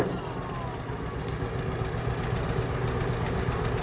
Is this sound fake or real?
real